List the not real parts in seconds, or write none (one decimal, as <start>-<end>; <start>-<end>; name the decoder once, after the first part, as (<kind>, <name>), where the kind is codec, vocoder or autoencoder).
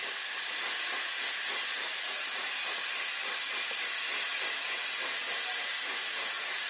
1.7-2.6 (vocoder, BigVGAN v2)